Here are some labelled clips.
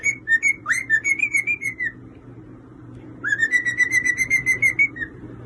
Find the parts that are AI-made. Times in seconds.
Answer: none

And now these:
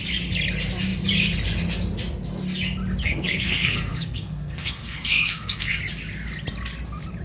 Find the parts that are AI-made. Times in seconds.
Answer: 3.0-5.8 (codec, SNAC)